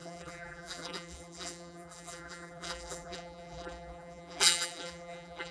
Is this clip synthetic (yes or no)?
yes